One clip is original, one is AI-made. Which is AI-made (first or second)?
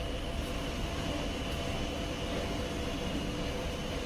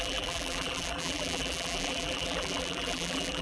second